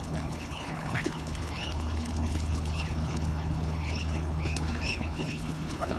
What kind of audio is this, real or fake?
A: fake